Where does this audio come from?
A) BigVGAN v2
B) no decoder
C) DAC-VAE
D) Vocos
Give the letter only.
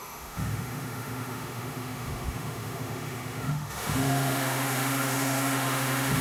C